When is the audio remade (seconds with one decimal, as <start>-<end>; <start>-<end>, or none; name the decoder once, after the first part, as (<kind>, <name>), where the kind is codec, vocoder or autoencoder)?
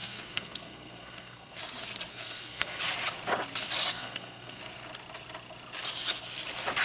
0.0-1.6 (codec, SNAC); 2.1-2.8; 3.9-4.6